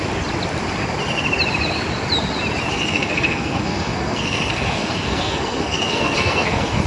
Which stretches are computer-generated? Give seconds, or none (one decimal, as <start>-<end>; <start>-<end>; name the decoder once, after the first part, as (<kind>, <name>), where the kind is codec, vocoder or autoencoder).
2.7-6.9 (codec, SNAC)